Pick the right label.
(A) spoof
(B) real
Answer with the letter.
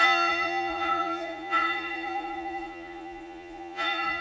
A